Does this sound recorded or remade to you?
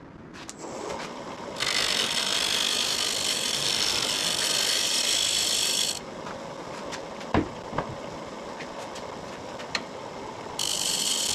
recorded